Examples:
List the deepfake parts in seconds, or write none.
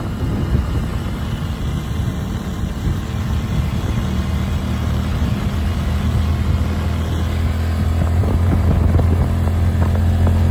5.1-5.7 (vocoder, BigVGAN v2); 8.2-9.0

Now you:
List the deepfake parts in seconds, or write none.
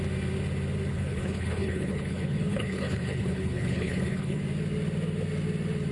0.9-4.4 (codec, HILCodec)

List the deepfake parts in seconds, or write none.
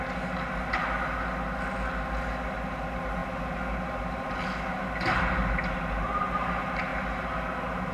none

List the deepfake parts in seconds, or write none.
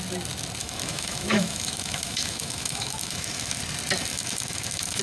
0.6-3.6 (autoencoder, DAC-VAE); 4.1-5.0